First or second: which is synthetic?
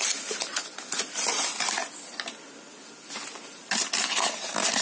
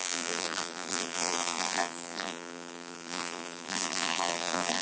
second